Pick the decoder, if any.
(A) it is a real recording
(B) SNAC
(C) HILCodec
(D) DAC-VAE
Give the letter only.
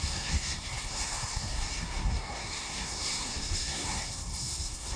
B